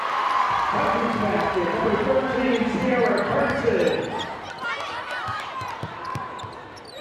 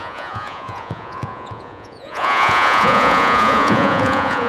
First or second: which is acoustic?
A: first